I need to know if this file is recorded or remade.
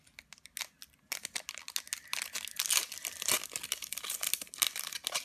recorded